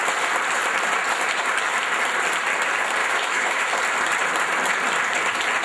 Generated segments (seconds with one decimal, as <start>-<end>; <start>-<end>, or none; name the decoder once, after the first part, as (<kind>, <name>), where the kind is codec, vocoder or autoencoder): 3.0-3.7 (autoencoder, DAC-VAE)